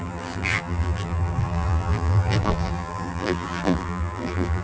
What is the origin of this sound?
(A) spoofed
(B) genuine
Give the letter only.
A